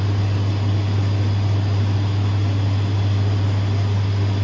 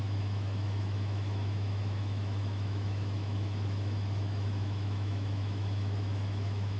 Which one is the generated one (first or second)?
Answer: second